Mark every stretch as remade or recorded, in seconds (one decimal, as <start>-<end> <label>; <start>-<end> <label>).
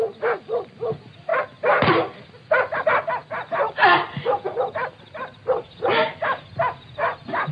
0.0-3.2 recorded; 3.2-3.9 remade; 3.9-7.5 recorded